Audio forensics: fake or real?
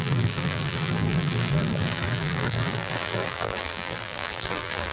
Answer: fake